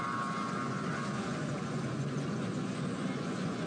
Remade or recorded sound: remade